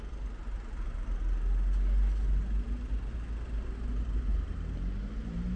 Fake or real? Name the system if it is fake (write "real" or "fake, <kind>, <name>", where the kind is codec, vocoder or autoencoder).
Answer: real